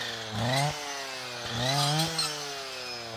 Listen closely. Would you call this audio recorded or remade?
recorded